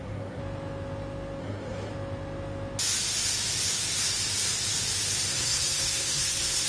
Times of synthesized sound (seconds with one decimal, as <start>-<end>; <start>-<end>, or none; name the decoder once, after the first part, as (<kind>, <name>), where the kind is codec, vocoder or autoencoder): 0.0-0.4 (codec, SNAC); 1.4-1.9; 5.3-6.7